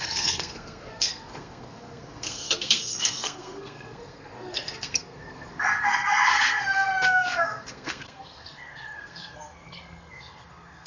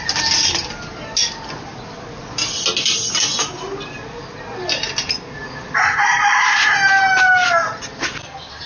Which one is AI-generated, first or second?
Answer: first